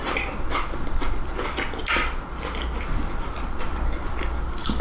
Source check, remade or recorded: recorded